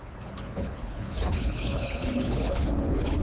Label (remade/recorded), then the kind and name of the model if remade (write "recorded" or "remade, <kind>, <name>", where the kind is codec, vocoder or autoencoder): remade, codec, HILCodec